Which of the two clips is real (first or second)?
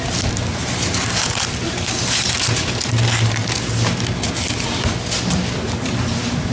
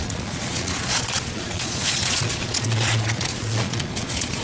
first